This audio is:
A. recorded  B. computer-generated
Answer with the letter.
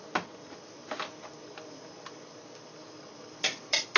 A